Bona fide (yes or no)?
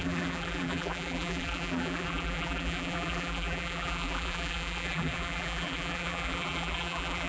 no